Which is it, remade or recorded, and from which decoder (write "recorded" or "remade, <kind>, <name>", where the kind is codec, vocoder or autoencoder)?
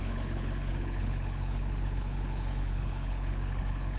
remade, codec, HILCodec